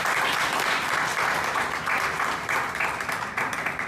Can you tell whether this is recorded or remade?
recorded